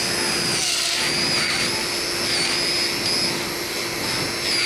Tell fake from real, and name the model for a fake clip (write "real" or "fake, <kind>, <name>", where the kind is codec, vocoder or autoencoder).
real